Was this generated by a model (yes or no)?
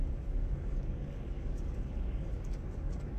yes